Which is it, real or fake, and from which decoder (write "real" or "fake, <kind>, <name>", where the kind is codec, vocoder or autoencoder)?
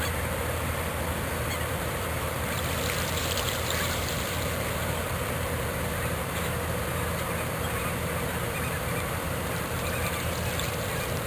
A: fake, vocoder, BigVGAN v2